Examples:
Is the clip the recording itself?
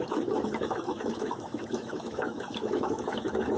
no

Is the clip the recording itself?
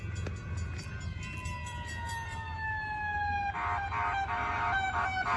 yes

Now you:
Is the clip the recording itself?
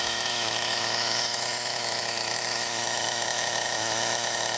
no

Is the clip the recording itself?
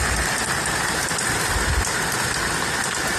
yes